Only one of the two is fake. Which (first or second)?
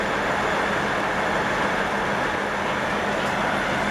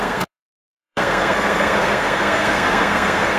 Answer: second